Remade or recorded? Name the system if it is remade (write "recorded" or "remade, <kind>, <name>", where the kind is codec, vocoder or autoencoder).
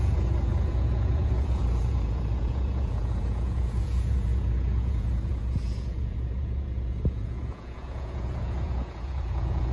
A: remade, vocoder, Vocos